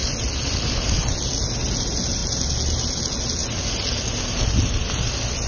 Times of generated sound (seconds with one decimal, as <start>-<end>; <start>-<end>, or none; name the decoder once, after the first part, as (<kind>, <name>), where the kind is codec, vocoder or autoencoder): none